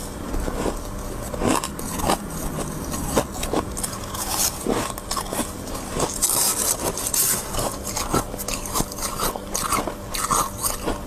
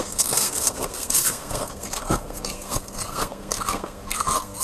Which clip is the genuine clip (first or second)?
first